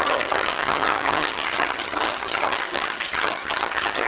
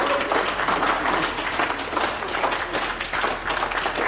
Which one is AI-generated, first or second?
first